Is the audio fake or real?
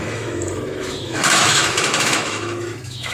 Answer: fake